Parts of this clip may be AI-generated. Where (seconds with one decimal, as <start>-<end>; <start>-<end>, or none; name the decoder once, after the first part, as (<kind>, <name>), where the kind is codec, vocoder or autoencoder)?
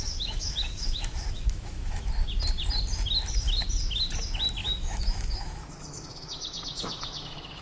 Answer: 0.0-2.1 (autoencoder, DAC-VAE); 4.6-7.6